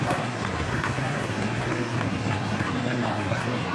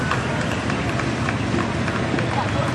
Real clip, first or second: second